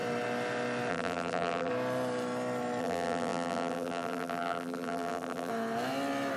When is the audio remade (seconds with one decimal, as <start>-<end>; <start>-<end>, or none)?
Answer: 0.9-1.7; 2.8-5.5